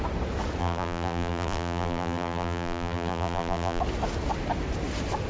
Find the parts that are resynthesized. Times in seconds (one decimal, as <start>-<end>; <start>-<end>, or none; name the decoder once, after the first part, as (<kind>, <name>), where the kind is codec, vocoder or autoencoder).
0.6-3.8 (vocoder, BigVGAN v2)